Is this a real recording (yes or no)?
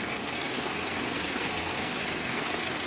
no